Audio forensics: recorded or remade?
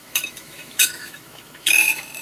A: remade